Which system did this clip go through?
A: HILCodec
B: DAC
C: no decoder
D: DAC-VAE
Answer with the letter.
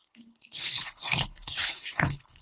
A